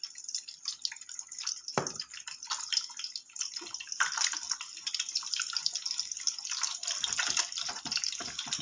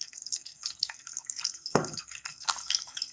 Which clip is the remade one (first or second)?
second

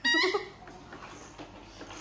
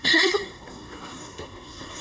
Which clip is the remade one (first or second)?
second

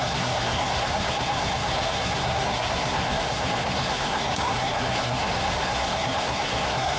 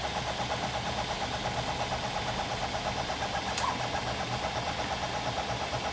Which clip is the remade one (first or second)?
first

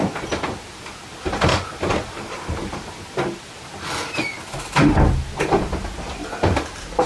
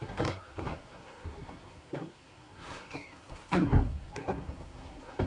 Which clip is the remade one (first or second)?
second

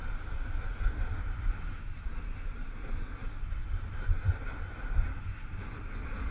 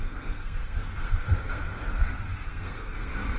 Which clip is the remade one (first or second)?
second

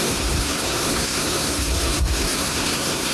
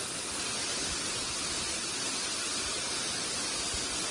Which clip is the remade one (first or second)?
first